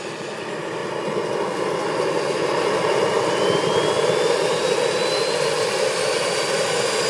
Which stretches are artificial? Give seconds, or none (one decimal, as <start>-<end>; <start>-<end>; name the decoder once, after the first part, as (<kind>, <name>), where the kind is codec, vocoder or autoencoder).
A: none